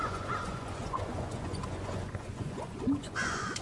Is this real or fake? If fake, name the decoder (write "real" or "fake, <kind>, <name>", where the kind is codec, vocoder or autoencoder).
fake, vocoder, Vocos